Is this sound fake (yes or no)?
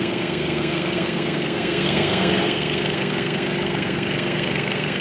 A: yes